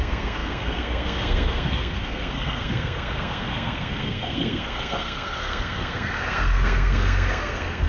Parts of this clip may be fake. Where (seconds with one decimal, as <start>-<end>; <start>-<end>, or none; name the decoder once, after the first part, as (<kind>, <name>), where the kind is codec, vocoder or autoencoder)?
0.0-7.9 (codec, SNAC)